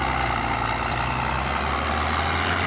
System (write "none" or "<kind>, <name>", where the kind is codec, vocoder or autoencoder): none